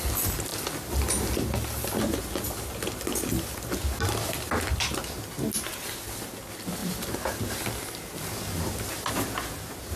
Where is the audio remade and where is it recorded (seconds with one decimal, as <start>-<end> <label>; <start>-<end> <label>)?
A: 0.0-10.0 recorded